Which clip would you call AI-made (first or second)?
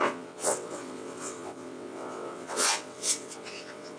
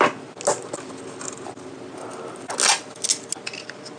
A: first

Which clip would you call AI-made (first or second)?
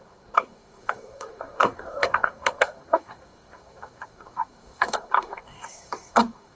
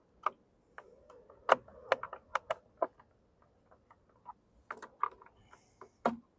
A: first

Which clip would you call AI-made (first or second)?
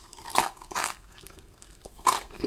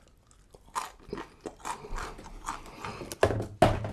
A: first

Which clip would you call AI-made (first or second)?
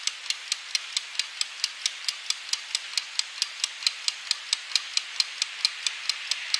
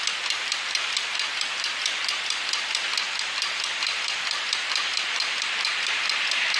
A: second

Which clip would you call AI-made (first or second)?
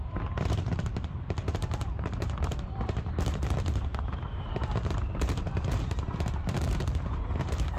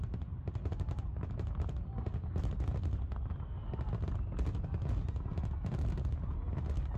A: first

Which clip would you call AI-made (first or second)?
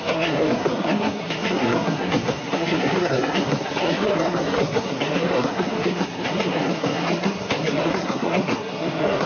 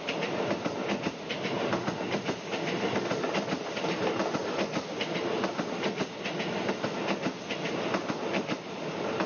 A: first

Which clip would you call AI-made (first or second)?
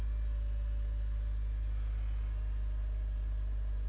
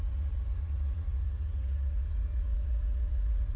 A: second